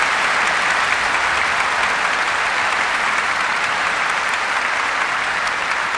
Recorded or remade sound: recorded